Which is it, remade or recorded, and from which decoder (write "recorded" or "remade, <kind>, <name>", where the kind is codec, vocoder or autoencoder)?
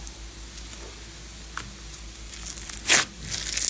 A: recorded